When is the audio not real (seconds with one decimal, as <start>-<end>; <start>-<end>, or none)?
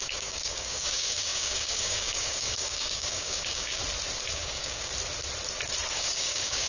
0.0-3.8; 4.3-4.9; 5.9-6.7